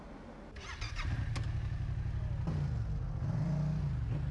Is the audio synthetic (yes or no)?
no